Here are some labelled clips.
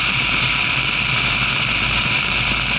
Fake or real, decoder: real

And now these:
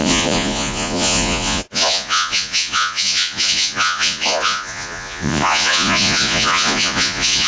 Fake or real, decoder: fake, vocoder, Vocos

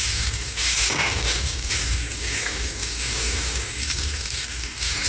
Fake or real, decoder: fake, codec, DAC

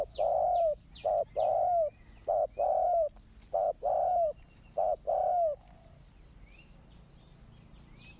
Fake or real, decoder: real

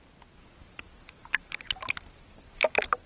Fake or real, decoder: real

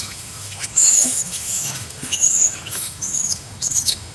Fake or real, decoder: fake, autoencoder, DAC-VAE